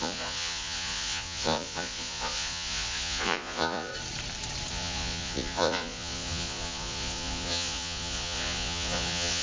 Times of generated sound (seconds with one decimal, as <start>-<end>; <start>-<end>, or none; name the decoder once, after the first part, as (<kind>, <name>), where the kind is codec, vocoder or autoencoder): 0.0-3.9 (vocoder, Vocos); 4.7-9.4